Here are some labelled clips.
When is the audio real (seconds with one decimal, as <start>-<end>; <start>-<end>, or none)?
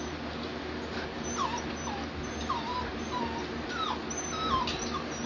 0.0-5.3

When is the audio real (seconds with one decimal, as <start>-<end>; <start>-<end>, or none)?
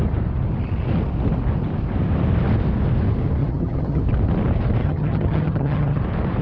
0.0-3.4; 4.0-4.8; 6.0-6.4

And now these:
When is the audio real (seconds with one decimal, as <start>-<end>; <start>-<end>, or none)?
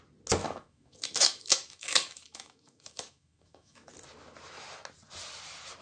0.0-0.4; 3.9-5.8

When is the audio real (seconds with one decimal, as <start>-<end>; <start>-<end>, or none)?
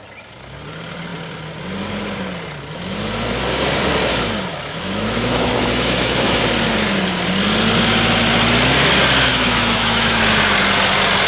0.0-4.5; 6.4-9.3; 10.2-11.3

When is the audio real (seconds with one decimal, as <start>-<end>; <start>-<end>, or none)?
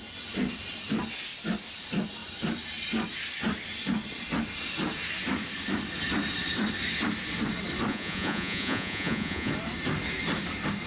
0.0-7.9; 9.5-10.9